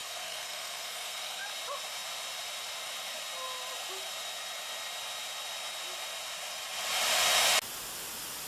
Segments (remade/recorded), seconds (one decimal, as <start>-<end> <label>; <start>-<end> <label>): 0.0-1.4 remade; 1.4-8.5 recorded